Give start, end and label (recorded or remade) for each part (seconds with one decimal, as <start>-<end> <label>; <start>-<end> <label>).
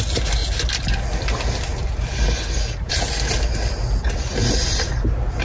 0.0-5.4 recorded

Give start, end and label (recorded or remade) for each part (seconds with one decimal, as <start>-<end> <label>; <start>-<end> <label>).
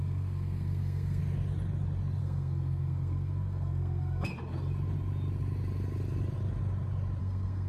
0.0-1.2 remade; 1.2-2.2 recorded; 2.2-4.3 remade; 4.3-7.2 recorded; 7.2-7.7 remade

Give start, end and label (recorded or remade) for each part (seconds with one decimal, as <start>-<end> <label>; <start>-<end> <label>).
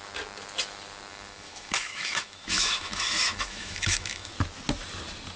0.0-1.1 recorded; 1.1-4.3 remade; 4.3-5.4 recorded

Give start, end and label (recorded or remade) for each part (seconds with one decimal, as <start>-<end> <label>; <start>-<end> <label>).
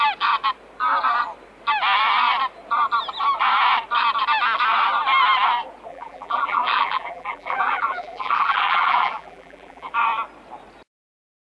0.0-5.9 recorded; 5.9-9.9 remade; 9.9-11.5 recorded